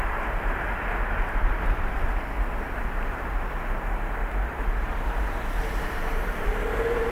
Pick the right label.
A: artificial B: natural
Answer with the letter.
A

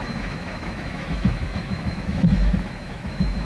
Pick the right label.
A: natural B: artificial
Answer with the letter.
B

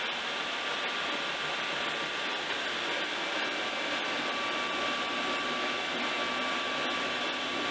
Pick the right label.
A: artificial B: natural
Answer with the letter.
B